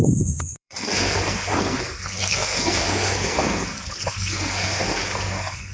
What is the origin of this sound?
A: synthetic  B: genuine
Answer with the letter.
A